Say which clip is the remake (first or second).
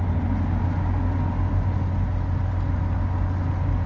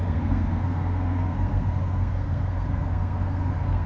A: second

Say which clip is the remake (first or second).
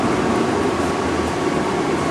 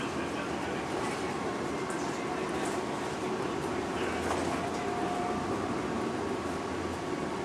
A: first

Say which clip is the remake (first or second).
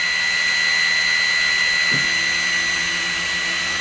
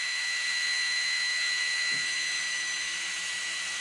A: second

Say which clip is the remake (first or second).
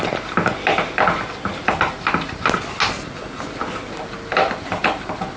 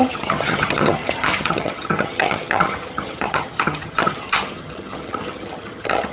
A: second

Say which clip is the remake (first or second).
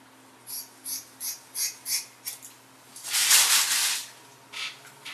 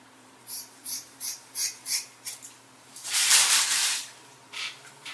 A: second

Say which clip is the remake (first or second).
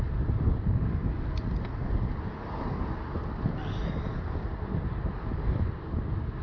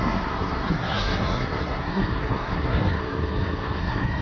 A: second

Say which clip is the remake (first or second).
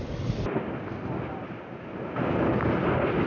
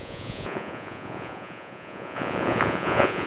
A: second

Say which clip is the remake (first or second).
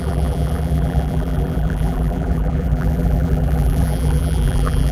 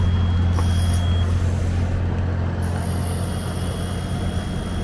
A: first